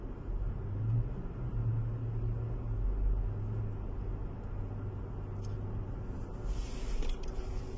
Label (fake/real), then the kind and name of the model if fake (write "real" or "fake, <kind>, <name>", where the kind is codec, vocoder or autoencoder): real